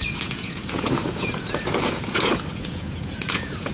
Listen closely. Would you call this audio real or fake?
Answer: fake